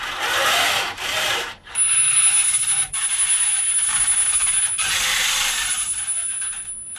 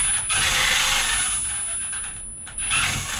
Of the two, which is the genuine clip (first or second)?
second